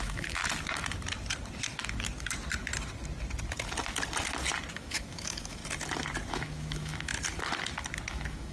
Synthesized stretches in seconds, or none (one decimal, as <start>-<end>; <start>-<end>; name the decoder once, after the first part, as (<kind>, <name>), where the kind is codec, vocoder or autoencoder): 0.0-0.4 (autoencoder, DAC-VAE); 4.7-5.6; 6.3-7.1; 8.1-8.5

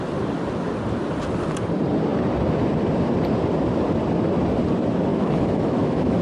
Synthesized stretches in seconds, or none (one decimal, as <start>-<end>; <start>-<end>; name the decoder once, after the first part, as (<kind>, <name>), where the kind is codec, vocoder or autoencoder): 5.1-6.2 (autoencoder, DAC-VAE)

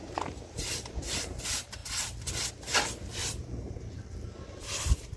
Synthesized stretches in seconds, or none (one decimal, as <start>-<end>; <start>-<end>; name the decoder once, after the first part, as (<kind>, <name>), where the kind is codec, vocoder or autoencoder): 0.0-1.4 (vocoder, BigVGAN v2); 3.2-4.0

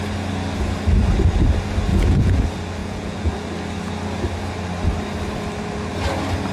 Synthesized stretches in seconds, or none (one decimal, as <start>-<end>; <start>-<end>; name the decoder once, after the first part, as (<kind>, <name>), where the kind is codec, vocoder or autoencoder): 1.9-2.4 (vocoder, Vocos); 2.8-3.3

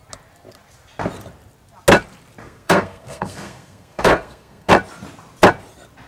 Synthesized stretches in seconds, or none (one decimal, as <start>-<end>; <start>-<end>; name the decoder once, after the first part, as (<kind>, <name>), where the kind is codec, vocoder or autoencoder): 2.4-4.7 (codec, SNAC)

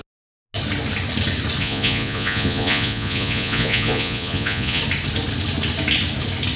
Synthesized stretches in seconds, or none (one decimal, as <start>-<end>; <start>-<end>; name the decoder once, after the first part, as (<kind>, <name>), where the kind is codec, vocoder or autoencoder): 1.6-4.8 (vocoder, Vocos)